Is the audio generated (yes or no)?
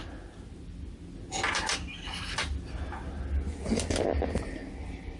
no